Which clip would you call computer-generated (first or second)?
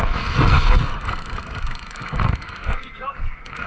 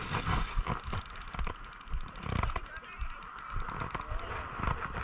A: first